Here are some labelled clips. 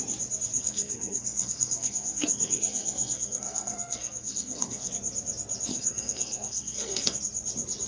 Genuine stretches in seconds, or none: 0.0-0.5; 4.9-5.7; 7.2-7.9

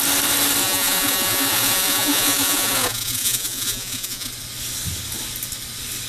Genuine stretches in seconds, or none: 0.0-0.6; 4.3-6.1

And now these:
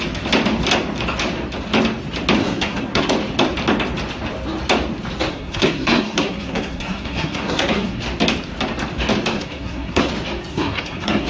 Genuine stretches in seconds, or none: 0.0-2.4; 3.1-5.3; 8.0-9.3; 10.1-10.5

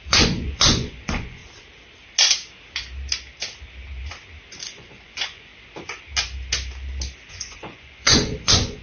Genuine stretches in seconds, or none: 1.4-4.5; 5.5-7.3